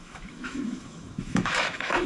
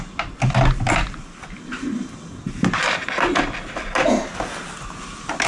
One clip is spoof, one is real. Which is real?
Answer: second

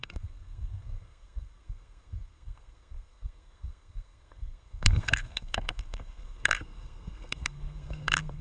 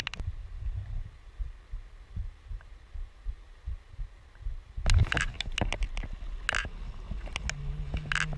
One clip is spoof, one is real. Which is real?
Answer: second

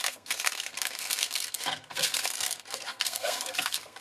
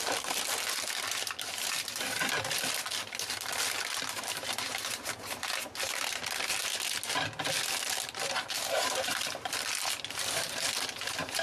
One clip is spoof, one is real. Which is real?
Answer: second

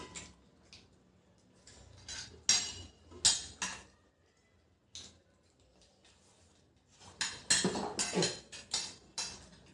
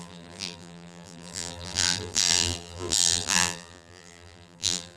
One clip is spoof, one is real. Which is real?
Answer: first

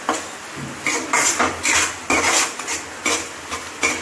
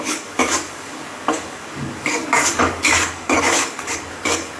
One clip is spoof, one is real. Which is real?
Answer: first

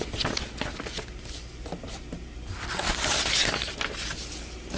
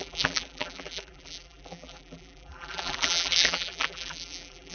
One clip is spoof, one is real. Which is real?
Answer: first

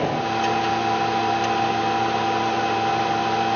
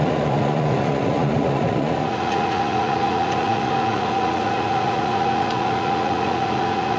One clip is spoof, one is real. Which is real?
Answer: first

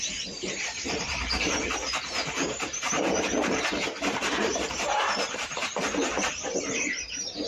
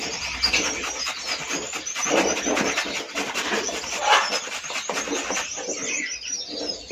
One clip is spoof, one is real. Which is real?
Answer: second